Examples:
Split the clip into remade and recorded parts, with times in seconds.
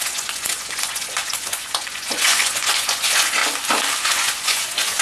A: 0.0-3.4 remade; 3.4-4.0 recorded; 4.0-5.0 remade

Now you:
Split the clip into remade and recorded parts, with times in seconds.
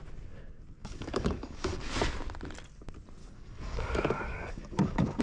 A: 0.0-0.8 recorded; 0.8-1.9 remade; 1.9-3.2 recorded; 3.2-5.2 remade